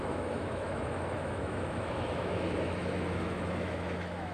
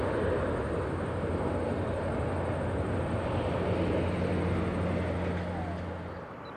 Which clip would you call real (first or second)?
second